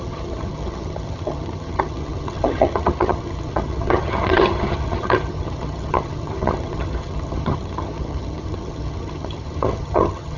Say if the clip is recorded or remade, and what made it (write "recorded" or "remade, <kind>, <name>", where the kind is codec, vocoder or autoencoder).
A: remade, vocoder, HiFi-GAN